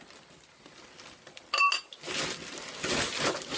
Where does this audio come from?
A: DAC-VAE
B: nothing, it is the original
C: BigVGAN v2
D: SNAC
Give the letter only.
B